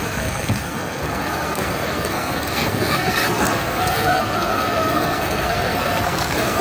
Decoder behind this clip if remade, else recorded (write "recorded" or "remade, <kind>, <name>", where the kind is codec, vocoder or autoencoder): remade, codec, SNAC